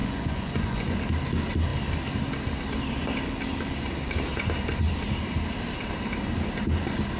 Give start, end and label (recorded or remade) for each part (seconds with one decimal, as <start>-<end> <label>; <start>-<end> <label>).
0.0-1.0 remade; 1.0-7.2 recorded